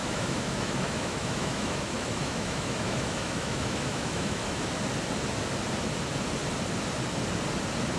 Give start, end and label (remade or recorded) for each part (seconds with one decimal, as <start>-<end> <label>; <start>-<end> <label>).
0.0-4.8 remade; 4.8-8.0 recorded